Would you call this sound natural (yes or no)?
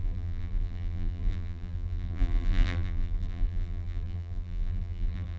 no